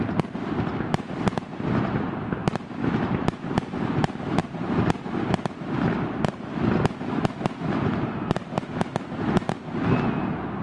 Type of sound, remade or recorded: recorded